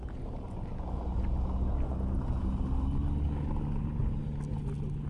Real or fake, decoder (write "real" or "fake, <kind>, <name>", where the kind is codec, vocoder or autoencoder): real